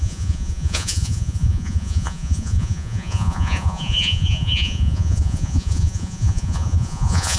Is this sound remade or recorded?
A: remade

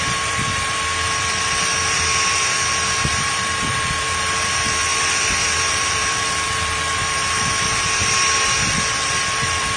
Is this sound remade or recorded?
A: remade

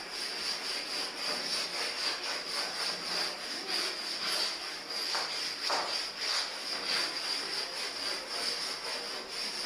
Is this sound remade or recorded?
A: recorded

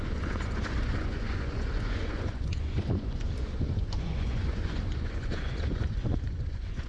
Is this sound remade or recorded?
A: remade